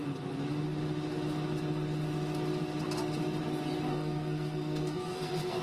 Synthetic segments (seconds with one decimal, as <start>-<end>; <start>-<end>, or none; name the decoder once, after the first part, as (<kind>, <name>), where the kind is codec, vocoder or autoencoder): 3.9-5.6 (codec, SNAC)